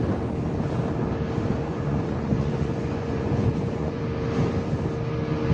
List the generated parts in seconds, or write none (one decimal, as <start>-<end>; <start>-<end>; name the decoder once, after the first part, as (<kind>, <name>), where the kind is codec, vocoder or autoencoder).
1.6-4.0 (vocoder, Vocos)